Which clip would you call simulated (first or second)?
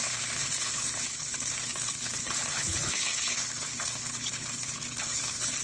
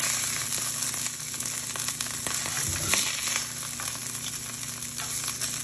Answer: first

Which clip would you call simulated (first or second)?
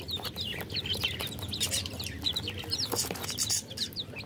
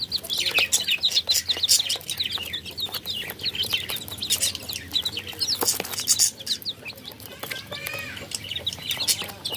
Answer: first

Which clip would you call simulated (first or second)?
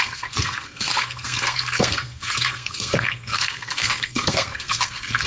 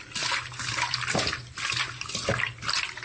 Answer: first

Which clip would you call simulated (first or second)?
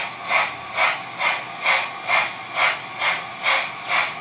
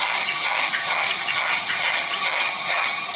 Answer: second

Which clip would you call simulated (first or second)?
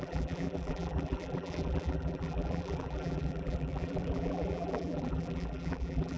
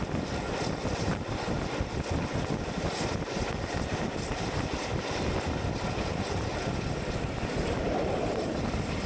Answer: first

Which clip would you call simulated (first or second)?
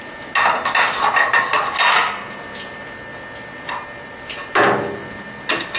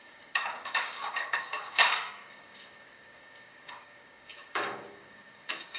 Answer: second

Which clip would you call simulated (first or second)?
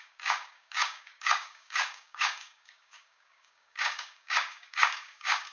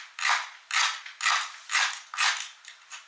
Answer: first